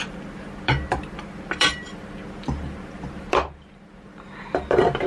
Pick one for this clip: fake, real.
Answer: fake